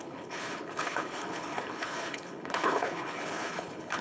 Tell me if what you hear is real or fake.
fake